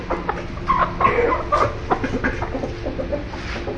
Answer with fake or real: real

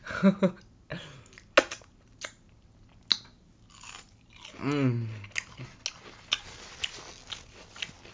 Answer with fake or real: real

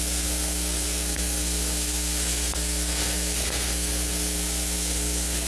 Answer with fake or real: fake